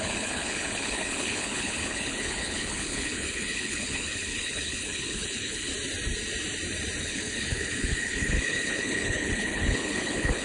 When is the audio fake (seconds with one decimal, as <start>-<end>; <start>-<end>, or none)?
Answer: 0.0-5.7; 7.0-10.4